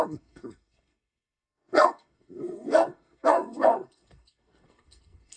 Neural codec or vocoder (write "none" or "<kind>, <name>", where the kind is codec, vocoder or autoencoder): codec, SNAC